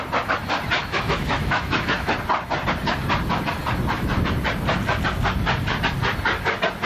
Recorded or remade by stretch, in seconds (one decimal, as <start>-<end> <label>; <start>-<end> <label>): 0.0-0.8 recorded; 0.8-2.1 remade; 2.1-6.9 recorded

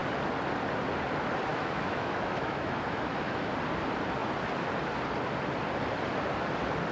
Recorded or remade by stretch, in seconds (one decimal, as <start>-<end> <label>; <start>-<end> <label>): 0.0-1.5 recorded; 1.5-3.5 remade; 3.5-6.9 recorded

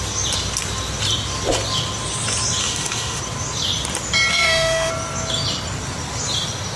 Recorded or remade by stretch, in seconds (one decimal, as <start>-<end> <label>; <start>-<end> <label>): 0.0-2.6 recorded; 2.6-3.2 remade; 3.2-4.3 recorded; 4.3-4.9 remade; 4.9-6.8 recorded

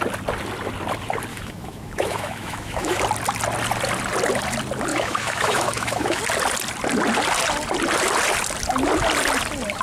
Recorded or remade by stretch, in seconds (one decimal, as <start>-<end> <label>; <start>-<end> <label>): 0.0-1.3 recorded; 1.3-3.0 remade; 3.0-4.9 recorded; 4.9-6.2 remade; 6.2-9.8 recorded

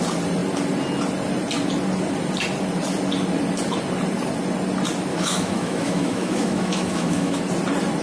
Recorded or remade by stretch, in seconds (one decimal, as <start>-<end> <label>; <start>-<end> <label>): 0.0-5.1 recorded; 5.1-7.4 remade; 7.4-8.0 recorded

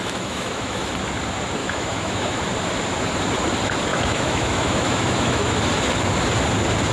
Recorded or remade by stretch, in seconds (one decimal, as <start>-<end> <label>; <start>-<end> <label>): 0.0-0.9 remade; 0.9-1.6 recorded; 1.6-2.4 remade; 2.4-3.9 recorded; 3.9-5.6 remade; 5.6-6.9 recorded

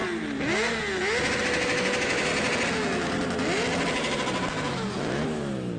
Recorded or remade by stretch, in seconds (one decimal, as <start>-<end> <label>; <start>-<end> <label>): 0.0-1.4 recorded; 1.4-2.3 remade; 2.3-4.9 recorded; 4.9-5.8 remade